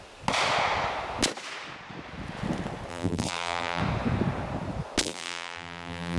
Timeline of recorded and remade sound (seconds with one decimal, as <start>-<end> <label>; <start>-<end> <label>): 0.0-2.9 recorded; 2.9-3.8 remade; 3.8-5.0 recorded; 5.0-6.2 remade